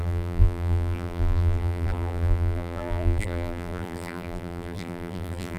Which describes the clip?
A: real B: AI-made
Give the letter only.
B